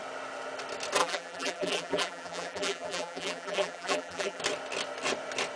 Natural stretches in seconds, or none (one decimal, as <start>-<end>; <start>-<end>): 0.0-1.0; 4.4-5.6